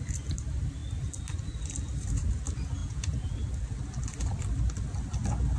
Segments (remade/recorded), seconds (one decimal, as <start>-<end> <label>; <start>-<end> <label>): 0.0-2.8 recorded; 2.8-3.3 remade; 3.3-5.6 recorded